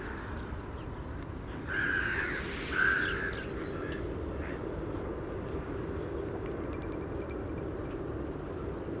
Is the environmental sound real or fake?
real